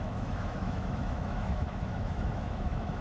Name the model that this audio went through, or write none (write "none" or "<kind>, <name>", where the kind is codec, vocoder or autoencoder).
autoencoder, DAC-VAE